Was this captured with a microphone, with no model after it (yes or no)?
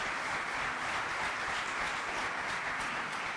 yes